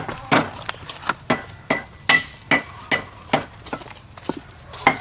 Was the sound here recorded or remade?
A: recorded